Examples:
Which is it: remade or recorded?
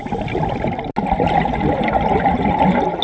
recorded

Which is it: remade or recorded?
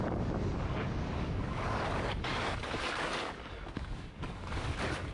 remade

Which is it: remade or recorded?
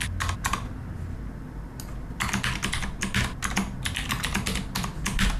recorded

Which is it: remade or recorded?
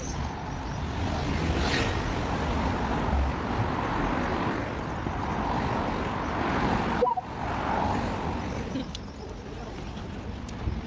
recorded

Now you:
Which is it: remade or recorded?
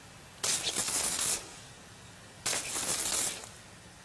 recorded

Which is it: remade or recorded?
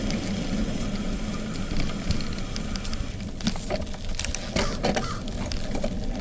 recorded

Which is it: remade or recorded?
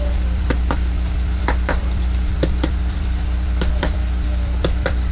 remade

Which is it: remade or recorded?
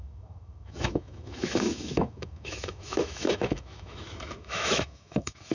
remade